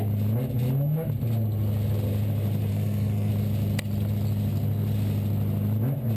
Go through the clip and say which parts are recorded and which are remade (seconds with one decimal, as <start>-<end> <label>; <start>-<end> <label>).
0.0-2.7 recorded; 2.7-3.3 remade; 3.3-6.2 recorded